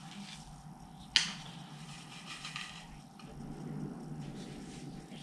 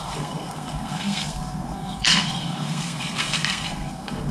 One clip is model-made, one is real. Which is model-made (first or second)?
second